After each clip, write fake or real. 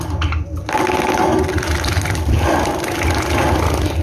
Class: real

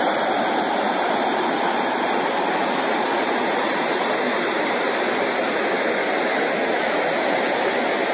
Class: fake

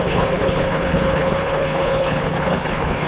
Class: fake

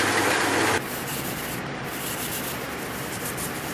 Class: real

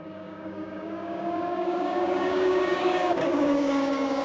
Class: fake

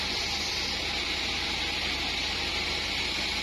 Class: real